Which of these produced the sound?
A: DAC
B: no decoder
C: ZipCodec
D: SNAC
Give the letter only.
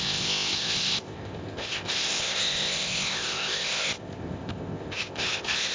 C